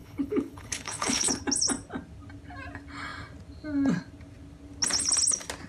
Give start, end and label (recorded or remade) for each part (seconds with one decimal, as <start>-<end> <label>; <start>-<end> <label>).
0.0-1.4 remade; 1.4-5.7 recorded